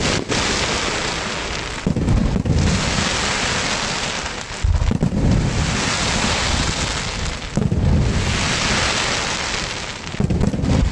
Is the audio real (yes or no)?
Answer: yes